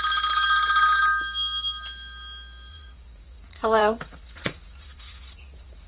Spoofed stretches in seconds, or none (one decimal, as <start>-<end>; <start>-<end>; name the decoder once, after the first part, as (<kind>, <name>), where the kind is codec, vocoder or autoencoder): 2.7-5.9 (vocoder, Vocos)

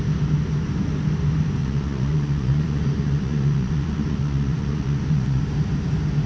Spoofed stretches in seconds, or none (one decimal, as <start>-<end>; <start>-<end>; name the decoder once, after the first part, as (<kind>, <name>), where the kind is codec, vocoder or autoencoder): 1.6-5.4 (vocoder, Vocos)

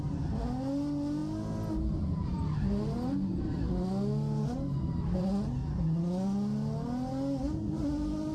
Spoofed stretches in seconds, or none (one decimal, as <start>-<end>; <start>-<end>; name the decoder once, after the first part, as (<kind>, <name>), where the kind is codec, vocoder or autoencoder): none

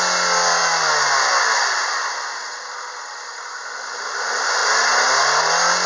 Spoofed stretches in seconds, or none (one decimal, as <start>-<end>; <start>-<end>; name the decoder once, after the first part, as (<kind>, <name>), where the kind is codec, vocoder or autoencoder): none

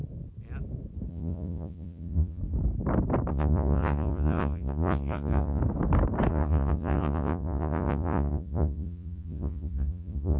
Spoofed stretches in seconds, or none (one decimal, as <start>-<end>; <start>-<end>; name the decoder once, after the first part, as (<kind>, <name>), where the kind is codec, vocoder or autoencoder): 1.1-2.4 (vocoder, Vocos); 3.3-5.6; 6.3-10.4

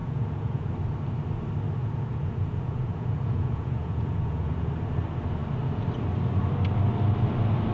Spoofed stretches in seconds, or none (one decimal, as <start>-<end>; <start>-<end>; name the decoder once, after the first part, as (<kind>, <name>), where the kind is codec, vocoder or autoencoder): 0.0-0.7 (vocoder, Vocos); 1.8-4.7